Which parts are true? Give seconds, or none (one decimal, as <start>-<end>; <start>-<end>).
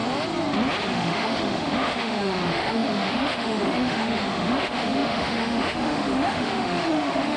0.0-0.9